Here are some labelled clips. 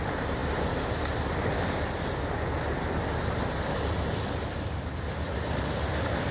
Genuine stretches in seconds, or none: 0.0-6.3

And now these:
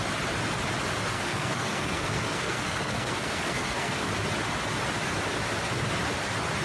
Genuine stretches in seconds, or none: 0.0-1.1; 4.1-6.6